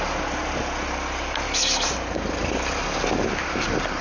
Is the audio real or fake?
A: real